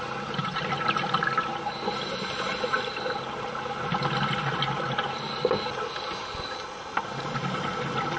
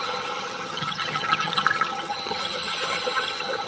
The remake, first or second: second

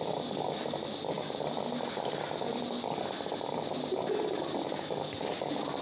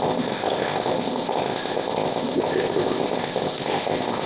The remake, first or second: second